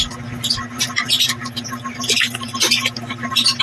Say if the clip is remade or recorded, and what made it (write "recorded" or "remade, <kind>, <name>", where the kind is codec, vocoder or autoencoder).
recorded